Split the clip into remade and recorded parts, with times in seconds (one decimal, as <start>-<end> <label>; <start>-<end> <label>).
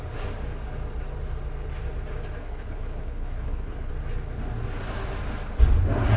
0.0-2.4 recorded; 2.4-3.9 remade; 3.9-6.2 recorded